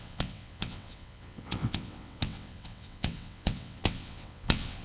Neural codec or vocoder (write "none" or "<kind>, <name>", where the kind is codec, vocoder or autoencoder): vocoder, WaveNeXt